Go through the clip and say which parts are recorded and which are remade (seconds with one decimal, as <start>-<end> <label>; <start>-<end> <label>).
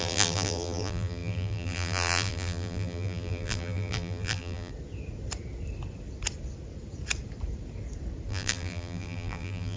0.0-4.7 remade; 4.7-8.3 recorded; 8.3-9.8 remade